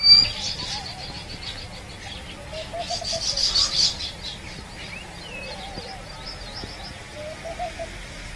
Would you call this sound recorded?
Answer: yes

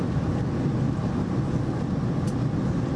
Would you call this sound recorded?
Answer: yes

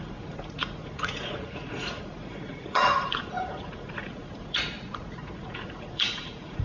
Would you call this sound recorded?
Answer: no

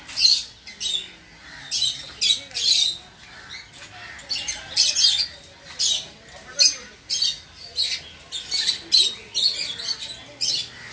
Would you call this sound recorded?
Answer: yes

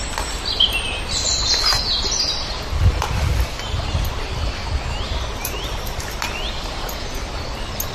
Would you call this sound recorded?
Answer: yes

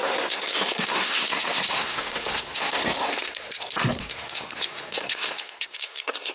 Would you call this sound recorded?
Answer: no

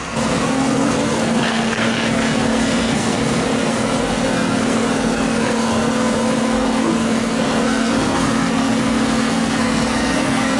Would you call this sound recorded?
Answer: no